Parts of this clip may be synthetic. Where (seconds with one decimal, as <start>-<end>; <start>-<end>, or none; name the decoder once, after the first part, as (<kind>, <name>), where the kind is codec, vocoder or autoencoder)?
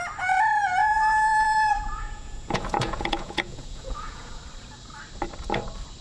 0.8-4.4 (vocoder, Vocos)